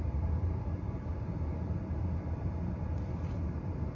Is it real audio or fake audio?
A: real